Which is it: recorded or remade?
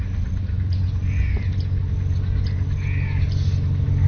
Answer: recorded